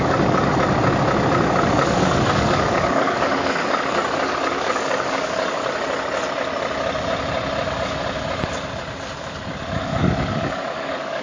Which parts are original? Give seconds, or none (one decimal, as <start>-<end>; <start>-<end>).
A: 0.5-1.6; 4.0-4.5; 5.6-9.8